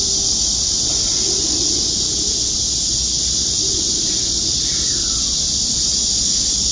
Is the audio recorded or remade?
recorded